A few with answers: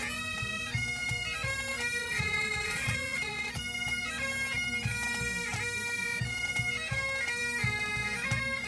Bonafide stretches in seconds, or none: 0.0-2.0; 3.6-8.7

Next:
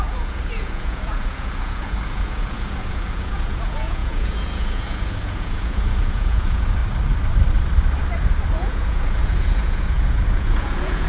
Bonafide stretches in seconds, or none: 6.8-8.5

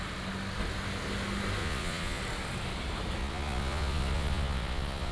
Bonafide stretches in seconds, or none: 0.0-1.6; 2.2-3.2

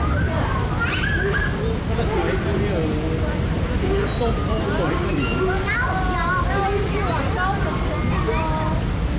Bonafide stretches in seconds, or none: 0.0-9.2

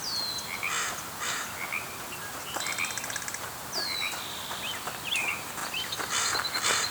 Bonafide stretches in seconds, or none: 0.0-6.9

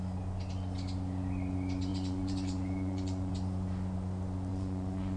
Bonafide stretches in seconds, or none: 0.0-1.9; 3.3-4.5

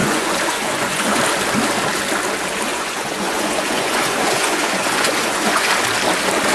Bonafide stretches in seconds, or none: 1.2-2.7; 5.7-6.5

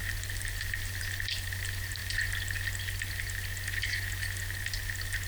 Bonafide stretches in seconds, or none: 0.0-5.3